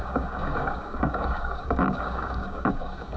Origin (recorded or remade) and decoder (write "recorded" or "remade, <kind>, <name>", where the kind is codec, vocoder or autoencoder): remade, codec, DAC